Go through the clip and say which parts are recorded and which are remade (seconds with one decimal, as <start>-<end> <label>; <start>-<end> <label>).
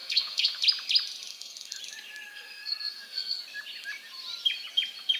0.0-0.6 remade; 0.6-1.3 recorded; 1.3-1.8 remade; 1.8-2.3 recorded; 2.3-3.4 remade; 3.4-5.2 recorded